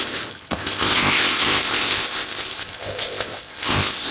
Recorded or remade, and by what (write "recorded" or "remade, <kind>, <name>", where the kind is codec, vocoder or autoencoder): remade, codec, ZipCodec